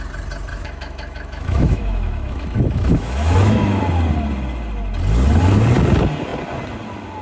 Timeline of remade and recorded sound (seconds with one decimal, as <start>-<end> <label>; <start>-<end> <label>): 0.0-0.5 recorded; 0.5-3.8 remade; 3.8-7.2 recorded